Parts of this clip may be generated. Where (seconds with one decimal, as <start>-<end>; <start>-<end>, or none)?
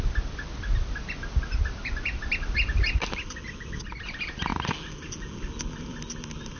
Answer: none